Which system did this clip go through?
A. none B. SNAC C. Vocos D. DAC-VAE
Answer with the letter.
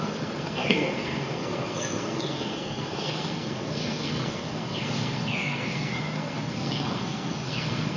B